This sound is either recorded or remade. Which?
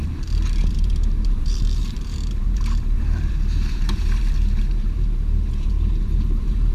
remade